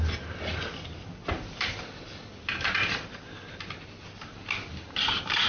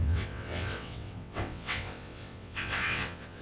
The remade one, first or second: second